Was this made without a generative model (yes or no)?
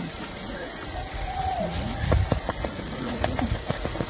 no